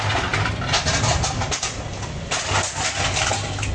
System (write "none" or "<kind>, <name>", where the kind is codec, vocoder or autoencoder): none